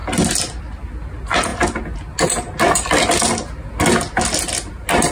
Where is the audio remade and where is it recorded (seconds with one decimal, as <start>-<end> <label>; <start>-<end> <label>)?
0.0-5.1 recorded